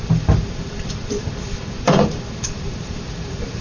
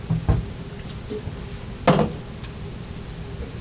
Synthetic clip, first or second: first